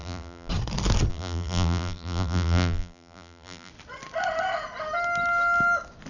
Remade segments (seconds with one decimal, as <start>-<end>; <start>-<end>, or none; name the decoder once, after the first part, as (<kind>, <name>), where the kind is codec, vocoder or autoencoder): 0.0-0.5 (vocoder, BigVGAN v2); 1.1-3.7

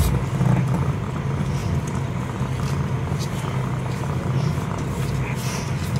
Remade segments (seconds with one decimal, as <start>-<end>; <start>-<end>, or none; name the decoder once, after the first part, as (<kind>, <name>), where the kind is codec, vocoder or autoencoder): none